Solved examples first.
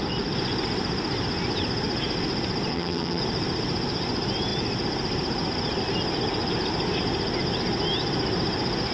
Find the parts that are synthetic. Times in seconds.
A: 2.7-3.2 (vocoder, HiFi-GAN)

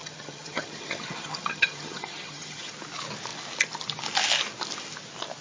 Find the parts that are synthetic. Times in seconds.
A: 0.0-2.7 (vocoder, HiFi-GAN)

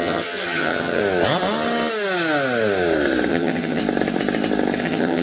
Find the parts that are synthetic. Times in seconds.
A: 0.0-1.0 (vocoder, HiFi-GAN); 3.3-3.8; 4.8-5.2

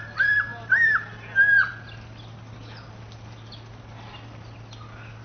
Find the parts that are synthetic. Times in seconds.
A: none

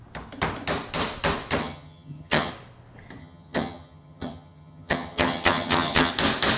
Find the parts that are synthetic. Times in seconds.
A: 1.6-2.5 (vocoder, HiFi-GAN); 3.2-6.1

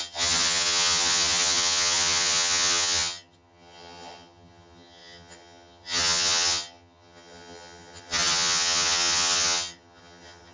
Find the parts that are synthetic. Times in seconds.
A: 0.0-10.5 (vocoder, HiFi-GAN)

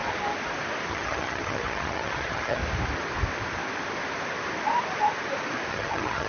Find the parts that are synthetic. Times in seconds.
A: 0.9-2.6 (vocoder, HiFi-GAN); 5.7-6.3